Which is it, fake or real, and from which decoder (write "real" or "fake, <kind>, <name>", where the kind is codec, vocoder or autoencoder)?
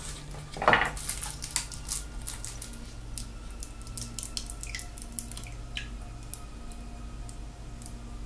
real